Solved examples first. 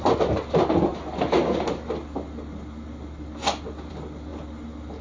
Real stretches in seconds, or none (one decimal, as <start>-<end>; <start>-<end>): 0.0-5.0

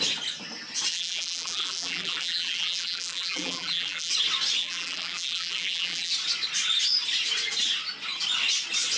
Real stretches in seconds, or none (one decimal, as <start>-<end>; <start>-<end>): 0.0-0.9; 4.1-4.6; 6.1-9.0

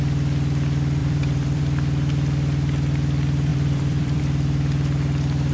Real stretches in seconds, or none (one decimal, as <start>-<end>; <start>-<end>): 0.0-1.0; 1.6-3.5; 4.2-5.5

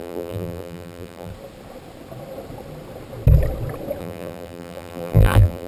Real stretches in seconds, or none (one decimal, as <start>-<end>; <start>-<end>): 1.3-4.0

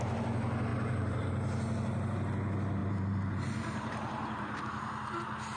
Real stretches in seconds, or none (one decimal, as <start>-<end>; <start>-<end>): 0.0-0.7; 1.3-2.8; 4.6-5.6

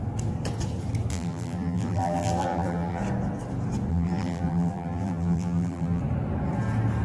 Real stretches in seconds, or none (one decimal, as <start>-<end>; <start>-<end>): 0.0-1.1; 3.0-3.9; 6.0-7.0